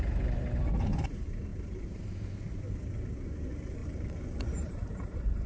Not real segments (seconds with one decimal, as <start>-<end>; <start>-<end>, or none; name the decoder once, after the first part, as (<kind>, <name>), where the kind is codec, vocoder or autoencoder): 0.0-5.5 (vocoder, BigVGAN v2)